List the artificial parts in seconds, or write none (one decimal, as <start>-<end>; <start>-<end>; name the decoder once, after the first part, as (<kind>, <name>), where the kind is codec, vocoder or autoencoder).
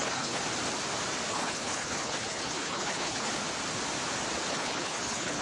0.0-0.4 (codec, HILCodec); 1.3-3.3; 4.5-5.4